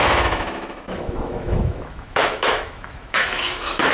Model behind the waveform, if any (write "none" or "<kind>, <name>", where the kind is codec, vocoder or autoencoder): autoencoder, DAC-VAE